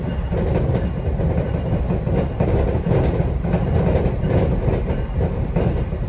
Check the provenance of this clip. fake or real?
real